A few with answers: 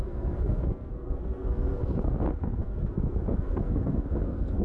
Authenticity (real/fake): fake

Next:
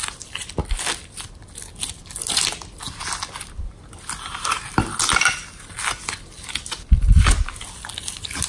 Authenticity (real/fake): real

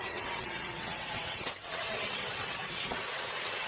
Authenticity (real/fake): fake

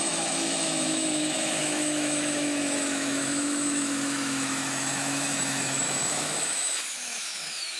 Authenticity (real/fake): fake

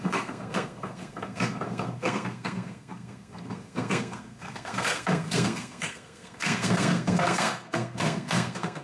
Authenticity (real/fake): fake